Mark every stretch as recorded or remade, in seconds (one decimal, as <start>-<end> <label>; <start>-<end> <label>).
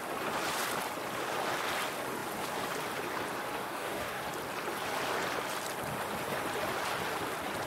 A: 0.0-3.6 recorded; 3.6-4.2 remade; 4.2-7.7 recorded